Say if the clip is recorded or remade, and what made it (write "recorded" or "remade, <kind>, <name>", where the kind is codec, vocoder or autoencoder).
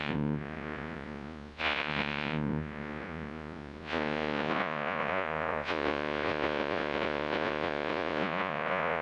remade, vocoder, Vocos